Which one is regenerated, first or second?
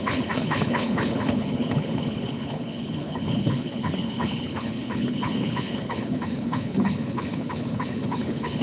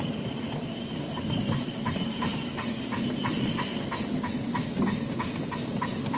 first